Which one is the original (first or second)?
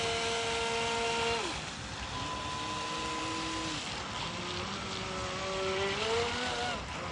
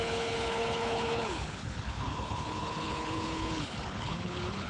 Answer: first